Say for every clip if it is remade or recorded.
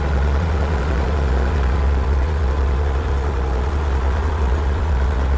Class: remade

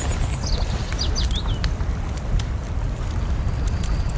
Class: recorded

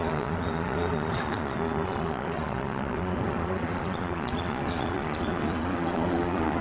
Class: remade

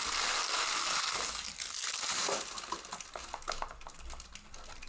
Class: recorded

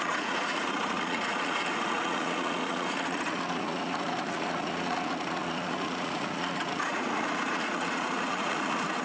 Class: remade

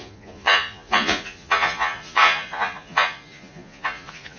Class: remade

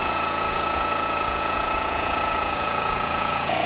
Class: remade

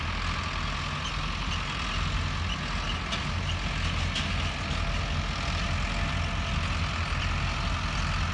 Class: recorded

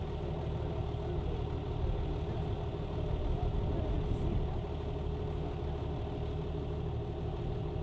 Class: recorded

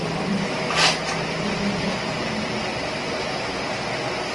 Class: recorded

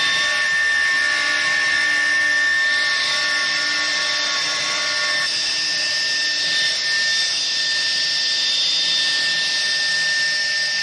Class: recorded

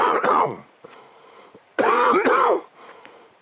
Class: remade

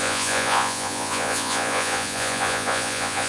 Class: remade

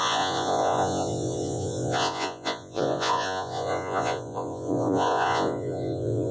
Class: remade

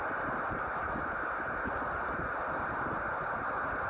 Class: recorded